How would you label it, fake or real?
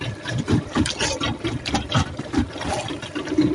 real